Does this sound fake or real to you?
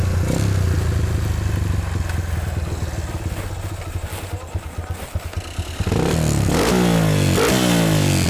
real